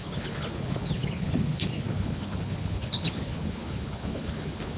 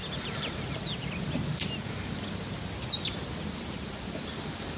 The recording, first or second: second